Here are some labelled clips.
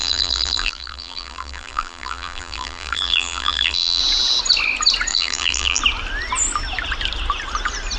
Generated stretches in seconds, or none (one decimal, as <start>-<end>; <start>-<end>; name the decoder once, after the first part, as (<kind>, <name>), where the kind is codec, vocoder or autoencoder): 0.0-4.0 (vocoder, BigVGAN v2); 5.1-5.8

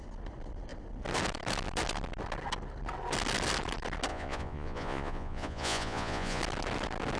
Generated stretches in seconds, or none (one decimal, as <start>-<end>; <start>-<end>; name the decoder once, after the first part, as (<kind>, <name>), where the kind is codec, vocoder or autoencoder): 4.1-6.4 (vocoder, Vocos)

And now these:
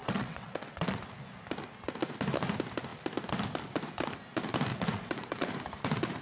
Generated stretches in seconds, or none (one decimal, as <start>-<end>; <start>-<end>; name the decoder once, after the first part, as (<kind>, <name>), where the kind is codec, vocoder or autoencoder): 0.0-1.0 (vocoder, WaveNeXt); 4.7-5.5

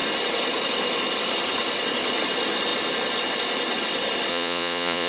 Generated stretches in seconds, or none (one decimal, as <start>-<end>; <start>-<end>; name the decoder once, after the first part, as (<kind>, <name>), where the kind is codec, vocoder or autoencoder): 4.3-5.1 (vocoder, Vocos)

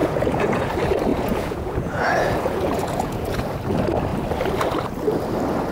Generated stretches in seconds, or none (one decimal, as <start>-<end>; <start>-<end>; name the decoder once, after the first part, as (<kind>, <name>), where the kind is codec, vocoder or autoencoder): 0.0-0.7 (vocoder, Vocos); 1.1-3.4

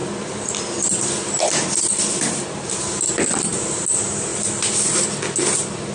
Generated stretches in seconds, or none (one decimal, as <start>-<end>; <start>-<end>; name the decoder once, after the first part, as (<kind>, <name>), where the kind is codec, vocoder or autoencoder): 0.0-0.7 (vocoder, BigVGAN v2); 1.9-2.9; 4.3-5.4